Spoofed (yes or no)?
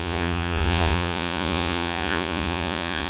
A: yes